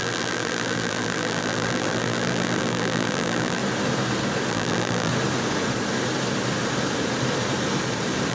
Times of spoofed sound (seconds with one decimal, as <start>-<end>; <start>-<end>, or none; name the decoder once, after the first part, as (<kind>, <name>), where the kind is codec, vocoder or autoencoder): 0.0-3.6 (vocoder, BigVGAN v2); 4.5-5.1